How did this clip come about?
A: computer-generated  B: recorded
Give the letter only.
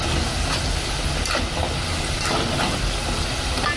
B